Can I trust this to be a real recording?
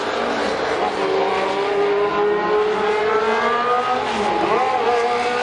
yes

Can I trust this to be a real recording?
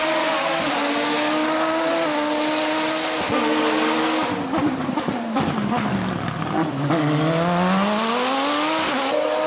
yes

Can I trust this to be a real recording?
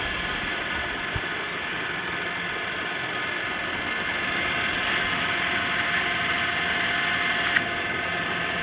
yes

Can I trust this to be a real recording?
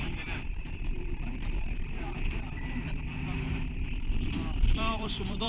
no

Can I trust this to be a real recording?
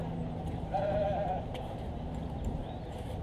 no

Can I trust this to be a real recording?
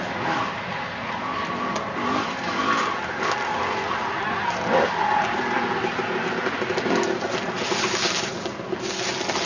yes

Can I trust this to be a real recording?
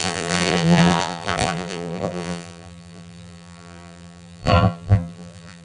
no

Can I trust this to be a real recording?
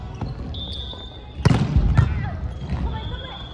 yes